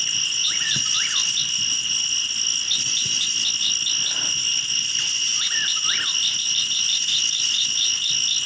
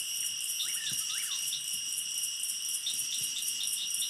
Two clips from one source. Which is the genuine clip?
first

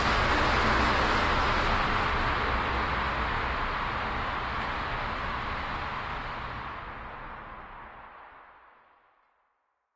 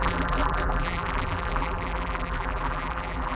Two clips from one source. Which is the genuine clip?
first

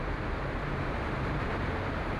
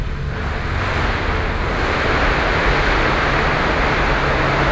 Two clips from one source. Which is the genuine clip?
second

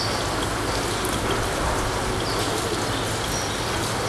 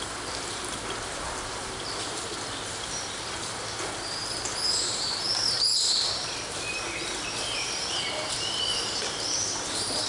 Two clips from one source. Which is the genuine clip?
first